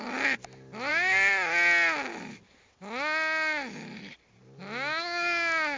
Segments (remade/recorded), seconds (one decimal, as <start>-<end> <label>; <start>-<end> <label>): 0.0-5.8 recorded